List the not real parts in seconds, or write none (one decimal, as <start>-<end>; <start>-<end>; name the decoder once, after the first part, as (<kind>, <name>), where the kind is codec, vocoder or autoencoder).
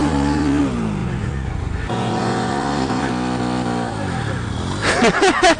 0.0-0.6 (vocoder, Vocos); 1.0-3.1